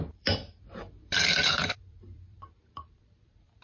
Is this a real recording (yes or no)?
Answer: no